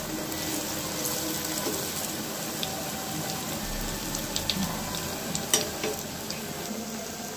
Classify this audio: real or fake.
real